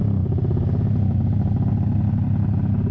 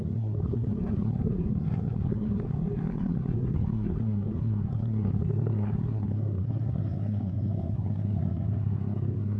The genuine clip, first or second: first